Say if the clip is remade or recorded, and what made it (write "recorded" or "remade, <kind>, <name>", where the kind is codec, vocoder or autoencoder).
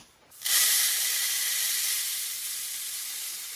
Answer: remade, vocoder, BigVGAN v2